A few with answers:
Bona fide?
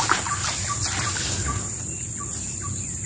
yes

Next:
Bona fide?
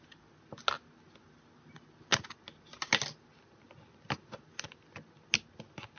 yes